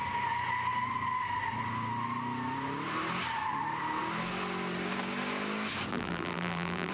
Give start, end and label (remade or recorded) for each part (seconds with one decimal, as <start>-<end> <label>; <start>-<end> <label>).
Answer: 0.0-5.9 recorded; 5.9-6.9 remade